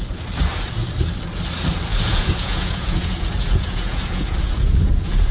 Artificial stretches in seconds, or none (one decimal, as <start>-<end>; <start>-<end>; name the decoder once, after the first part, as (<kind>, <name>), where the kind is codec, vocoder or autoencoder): 1.9-5.3 (vocoder, Vocos)

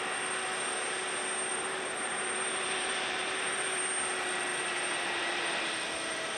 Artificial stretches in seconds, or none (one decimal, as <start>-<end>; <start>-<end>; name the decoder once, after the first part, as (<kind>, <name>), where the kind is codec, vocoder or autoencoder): 1.5-3.8 (vocoder, BigVGAN v2); 4.5-5.9

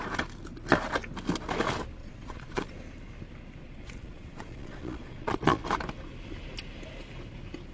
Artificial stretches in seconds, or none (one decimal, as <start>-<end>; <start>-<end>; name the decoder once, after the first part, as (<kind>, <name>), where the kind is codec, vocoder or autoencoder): 2.0-2.7 (vocoder, Vocos); 3.6-5.6

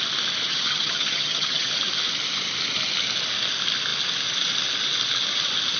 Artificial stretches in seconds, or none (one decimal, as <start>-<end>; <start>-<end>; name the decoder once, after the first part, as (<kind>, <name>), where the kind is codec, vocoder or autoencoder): 0.5-1.7 (vocoder, HiFi-GAN)